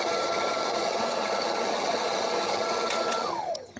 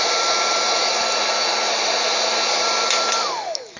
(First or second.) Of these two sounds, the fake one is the first